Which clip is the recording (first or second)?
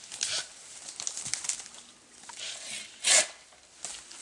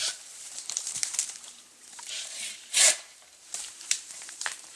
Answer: first